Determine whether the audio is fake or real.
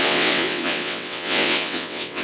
fake